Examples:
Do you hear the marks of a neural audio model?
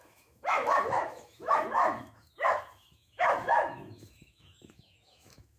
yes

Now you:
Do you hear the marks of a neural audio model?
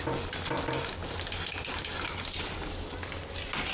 no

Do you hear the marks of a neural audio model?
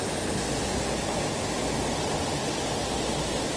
no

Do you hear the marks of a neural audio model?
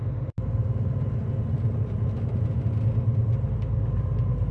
no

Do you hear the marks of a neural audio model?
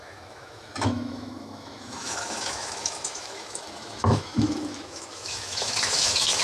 yes